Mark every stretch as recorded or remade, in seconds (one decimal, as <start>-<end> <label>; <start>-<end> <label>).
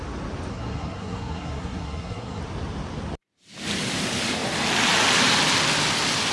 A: 0.0-0.5 recorded; 0.5-2.4 remade; 2.4-6.3 recorded